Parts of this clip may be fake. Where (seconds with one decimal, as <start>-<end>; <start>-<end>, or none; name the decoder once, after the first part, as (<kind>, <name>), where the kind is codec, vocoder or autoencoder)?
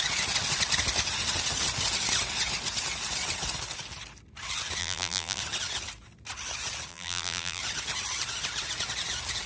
4.8-5.4 (vocoder, BigVGAN v2); 6.9-7.6